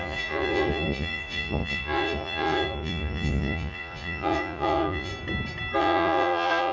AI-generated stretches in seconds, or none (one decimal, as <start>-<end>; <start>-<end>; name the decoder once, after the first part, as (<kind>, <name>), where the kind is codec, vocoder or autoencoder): 0.0-5.1 (vocoder, Vocos); 5.8-6.7